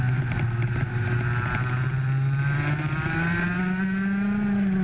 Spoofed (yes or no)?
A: no